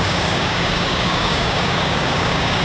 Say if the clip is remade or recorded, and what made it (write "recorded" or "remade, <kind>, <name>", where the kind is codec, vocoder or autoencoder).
remade, codec, DAC